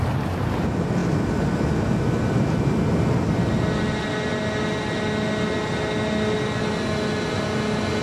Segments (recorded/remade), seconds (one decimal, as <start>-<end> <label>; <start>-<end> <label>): 0.0-8.0 recorded